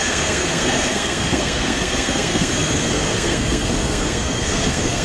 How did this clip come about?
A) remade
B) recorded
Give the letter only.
A